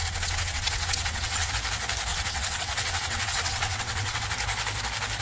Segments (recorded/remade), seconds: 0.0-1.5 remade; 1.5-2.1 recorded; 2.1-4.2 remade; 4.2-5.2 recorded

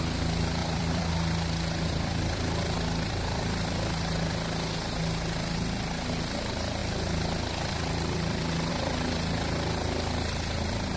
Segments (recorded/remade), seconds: 0.0-0.6 recorded; 0.6-4.3 remade; 4.3-11.0 recorded

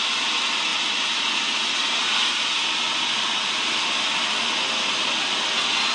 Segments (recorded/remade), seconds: 0.0-0.7 recorded; 0.7-1.2 remade; 1.2-5.9 recorded

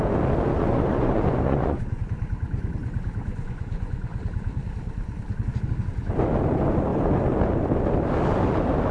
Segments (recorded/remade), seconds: 0.0-0.5 recorded; 0.5-2.0 remade; 2.0-3.3 recorded; 3.3-4.2 remade; 4.2-8.9 recorded

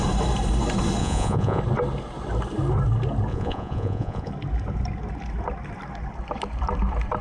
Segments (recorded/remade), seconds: 0.0-1.0 recorded; 1.0-1.6 remade; 1.6-3.3 recorded; 3.3-4.3 remade; 4.3-7.2 recorded